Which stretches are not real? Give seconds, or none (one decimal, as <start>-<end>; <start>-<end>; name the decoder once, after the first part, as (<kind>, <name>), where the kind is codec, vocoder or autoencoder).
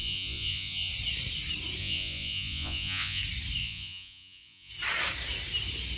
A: 0.0-0.9 (vocoder, Vocos); 1.8-3.2; 3.6-4.7